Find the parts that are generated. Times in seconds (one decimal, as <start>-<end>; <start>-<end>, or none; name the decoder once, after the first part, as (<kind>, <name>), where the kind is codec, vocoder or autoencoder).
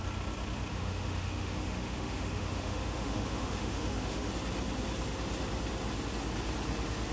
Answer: 0.7-4.3 (autoencoder, DAC-VAE)